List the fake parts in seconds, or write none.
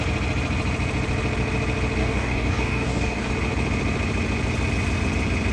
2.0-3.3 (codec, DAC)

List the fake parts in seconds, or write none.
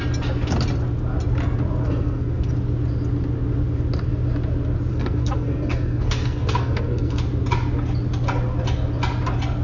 1.8-2.5 (codec, SNAC); 4.9-7.2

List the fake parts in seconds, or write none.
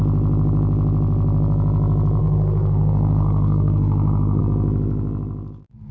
2.2-4.4 (codec, SNAC)